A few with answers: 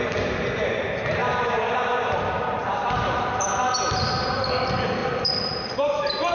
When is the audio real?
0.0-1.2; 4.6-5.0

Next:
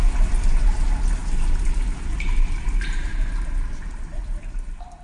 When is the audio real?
0.0-1.2; 4.2-5.0

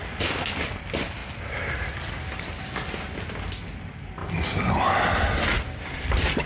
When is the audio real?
0.0-4.2; 4.7-6.5